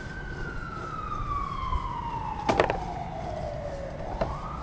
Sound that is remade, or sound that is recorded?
recorded